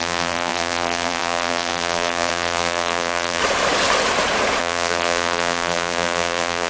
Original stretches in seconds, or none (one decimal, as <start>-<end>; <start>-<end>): 3.4-4.6